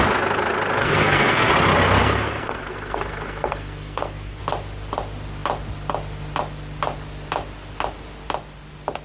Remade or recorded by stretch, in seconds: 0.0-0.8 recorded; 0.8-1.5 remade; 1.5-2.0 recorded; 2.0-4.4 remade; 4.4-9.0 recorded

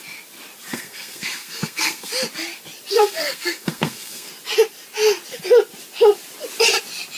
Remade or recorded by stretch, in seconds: 0.0-0.7 recorded; 0.7-2.1 remade; 2.1-2.9 recorded; 2.9-4.3 remade; 4.3-7.2 recorded

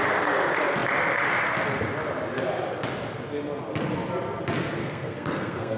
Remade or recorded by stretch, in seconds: 0.0-4.8 recorded; 4.8-5.8 remade

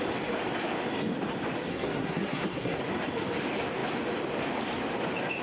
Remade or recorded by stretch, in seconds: 0.0-1.7 recorded; 1.7-2.8 remade; 2.8-5.4 recorded